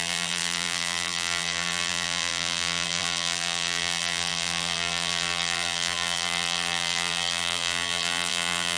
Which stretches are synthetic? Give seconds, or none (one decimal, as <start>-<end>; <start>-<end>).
0.0-8.8

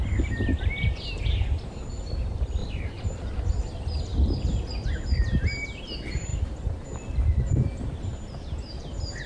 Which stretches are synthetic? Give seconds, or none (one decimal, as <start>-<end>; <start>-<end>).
2.6-3.5; 8.1-8.9

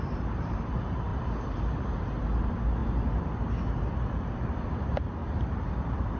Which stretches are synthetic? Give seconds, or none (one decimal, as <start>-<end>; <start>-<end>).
0.0-1.1; 1.6-2.8; 3.8-6.2

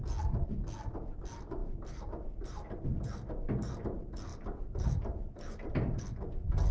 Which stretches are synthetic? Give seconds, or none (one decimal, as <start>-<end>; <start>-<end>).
1.6-3.8; 4.3-6.0

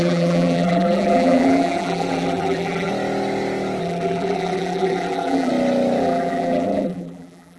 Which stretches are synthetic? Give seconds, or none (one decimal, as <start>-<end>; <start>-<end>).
0.0-2.9; 3.8-5.5; 6.0-7.6

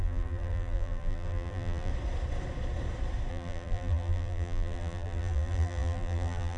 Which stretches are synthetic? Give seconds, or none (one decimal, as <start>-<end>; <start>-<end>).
0.0-1.9; 3.3-6.6

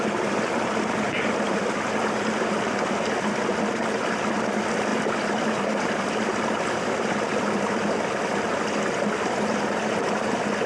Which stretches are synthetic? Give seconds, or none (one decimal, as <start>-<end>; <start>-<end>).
4.9-6.9

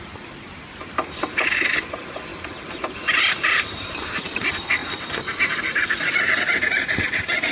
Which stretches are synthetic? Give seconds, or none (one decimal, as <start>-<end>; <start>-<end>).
0.0-2.3; 3.3-4.8; 5.6-7.5